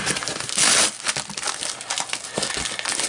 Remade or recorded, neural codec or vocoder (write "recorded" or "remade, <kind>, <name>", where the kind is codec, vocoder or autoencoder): recorded